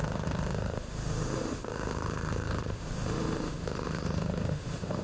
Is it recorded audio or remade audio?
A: remade